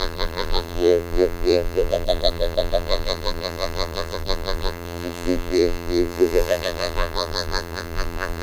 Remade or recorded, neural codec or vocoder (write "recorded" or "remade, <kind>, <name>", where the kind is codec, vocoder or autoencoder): remade, vocoder, BigVGAN v2